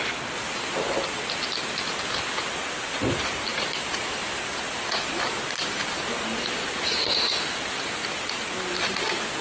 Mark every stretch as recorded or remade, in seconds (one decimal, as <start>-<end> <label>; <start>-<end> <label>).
0.0-3.5 recorded; 3.5-7.0 remade; 7.0-8.0 recorded; 8.0-9.0 remade; 9.0-9.4 recorded